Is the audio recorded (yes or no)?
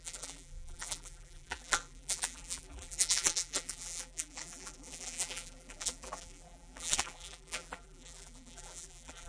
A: no